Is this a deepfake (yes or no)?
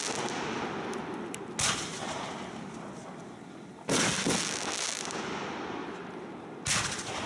no